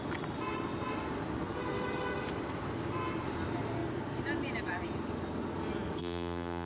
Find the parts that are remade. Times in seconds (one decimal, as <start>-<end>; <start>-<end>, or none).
6.0-6.7